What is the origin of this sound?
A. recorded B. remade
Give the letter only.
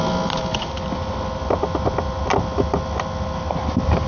A